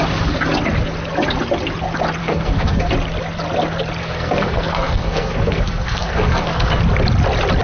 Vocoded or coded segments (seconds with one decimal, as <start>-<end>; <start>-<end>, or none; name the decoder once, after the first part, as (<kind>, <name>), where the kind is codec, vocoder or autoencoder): 2.2-2.9 (codec, SNAC); 4.0-6.8